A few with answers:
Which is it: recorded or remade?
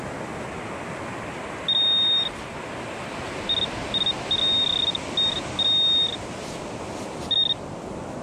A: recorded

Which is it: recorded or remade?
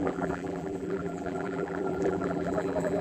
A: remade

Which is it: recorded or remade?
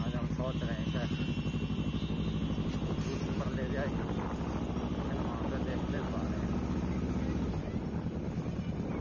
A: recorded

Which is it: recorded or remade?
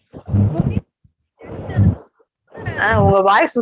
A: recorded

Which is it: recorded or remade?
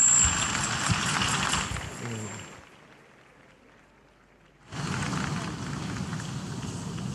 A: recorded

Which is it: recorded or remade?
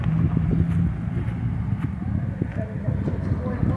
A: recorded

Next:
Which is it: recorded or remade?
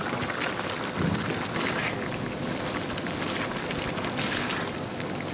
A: recorded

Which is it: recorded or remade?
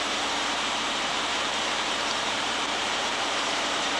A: remade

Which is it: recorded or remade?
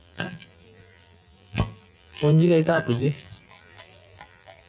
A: remade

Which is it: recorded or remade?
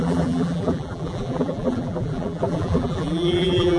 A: remade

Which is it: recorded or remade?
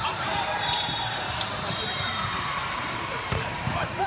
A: remade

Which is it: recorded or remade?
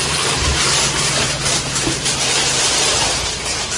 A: remade